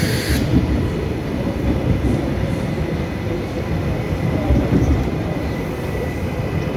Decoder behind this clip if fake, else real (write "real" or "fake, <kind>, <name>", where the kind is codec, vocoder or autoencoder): fake, vocoder, BigVGAN v2